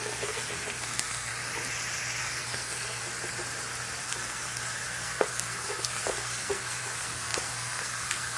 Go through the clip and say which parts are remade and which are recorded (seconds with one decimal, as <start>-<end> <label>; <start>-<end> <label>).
0.0-1.3 remade; 1.3-2.2 recorded; 2.2-3.0 remade; 3.0-4.0 recorded; 4.0-8.4 remade